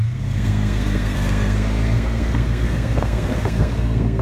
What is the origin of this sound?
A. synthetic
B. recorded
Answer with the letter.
A